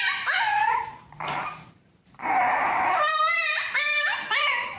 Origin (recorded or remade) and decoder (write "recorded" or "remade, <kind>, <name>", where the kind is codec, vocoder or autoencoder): remade, vocoder, BigVGAN v2